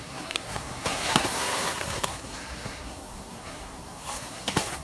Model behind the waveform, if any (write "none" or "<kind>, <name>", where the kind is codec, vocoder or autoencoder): codec, SNAC